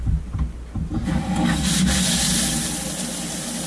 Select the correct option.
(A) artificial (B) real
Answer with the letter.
B